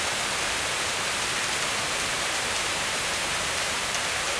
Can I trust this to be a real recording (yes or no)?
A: no